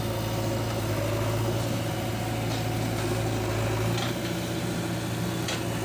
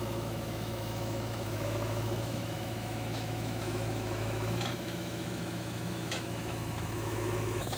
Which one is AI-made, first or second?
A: second